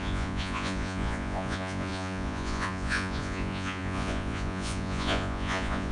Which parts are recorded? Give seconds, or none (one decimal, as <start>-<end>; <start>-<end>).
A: none

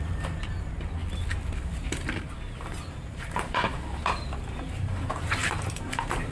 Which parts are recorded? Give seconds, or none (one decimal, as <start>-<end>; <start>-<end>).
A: 1.0-1.6

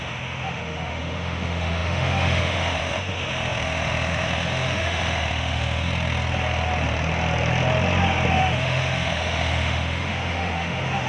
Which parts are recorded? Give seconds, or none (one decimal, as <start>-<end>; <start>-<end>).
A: 5.9-8.3

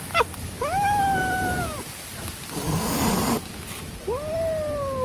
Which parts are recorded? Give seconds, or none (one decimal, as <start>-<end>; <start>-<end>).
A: 0.0-5.0

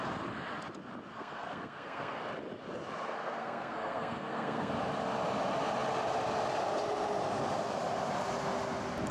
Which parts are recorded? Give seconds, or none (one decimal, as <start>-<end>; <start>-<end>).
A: 0.0-1.1; 2.2-3.2; 4.7-9.1

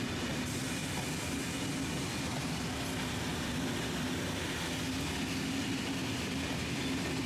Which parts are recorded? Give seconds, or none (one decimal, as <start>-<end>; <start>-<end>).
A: 0.0-6.0